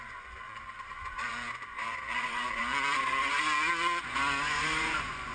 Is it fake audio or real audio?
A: fake